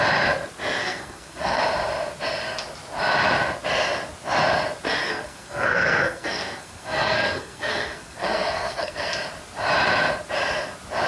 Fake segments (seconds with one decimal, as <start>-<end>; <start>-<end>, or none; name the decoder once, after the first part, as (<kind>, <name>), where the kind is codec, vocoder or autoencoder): 0.8-1.6 (codec, SNAC); 5.1-9.1